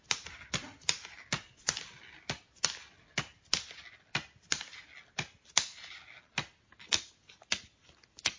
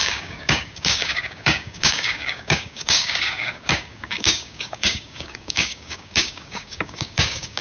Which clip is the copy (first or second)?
second